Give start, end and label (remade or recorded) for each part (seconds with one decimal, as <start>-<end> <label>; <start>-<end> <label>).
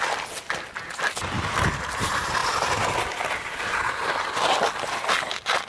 0.0-5.7 recorded